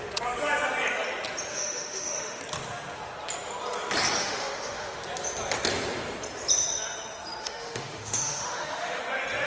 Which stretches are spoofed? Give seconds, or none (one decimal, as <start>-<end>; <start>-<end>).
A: 1.5-2.4; 4.2-5.0; 7.4-9.0